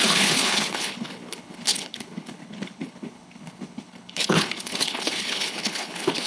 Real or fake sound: fake